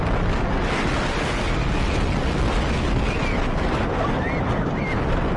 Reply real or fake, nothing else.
real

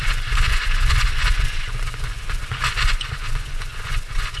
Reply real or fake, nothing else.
fake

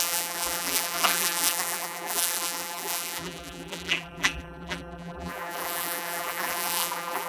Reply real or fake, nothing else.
fake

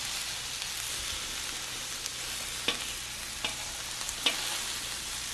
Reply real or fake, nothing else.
real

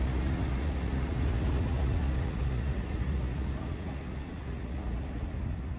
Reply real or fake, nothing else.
fake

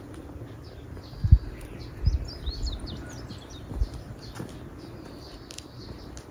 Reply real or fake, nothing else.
real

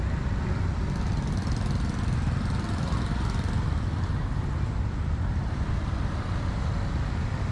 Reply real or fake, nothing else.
real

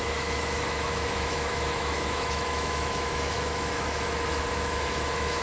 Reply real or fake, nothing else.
fake